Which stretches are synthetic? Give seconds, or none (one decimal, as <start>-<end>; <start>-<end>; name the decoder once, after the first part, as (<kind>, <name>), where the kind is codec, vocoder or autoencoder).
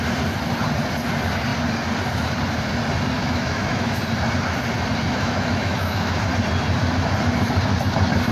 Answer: 3.2-4.0 (autoencoder, DAC-VAE); 5.1-6.2